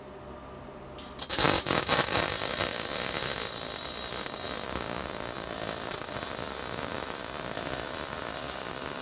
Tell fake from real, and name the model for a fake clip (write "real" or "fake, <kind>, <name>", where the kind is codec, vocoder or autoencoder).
real